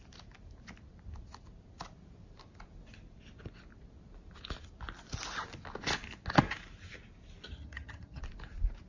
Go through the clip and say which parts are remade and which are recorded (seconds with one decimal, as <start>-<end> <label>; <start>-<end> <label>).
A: 0.0-7.5 recorded; 7.5-8.2 remade; 8.2-8.9 recorded